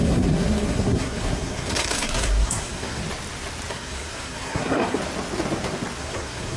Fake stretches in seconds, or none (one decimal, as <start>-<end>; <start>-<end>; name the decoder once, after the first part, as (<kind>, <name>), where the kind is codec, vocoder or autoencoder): 0.0-3.0 (codec, SNAC); 3.7-5.0; 6.0-6.6